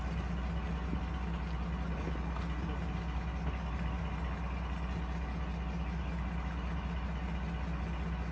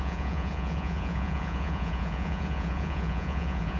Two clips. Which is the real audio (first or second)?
first